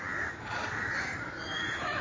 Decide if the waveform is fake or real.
fake